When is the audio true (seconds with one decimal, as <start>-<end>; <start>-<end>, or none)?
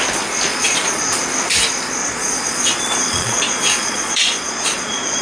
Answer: 0.0-0.5; 1.0-2.0